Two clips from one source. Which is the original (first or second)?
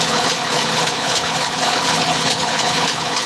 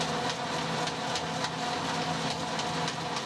second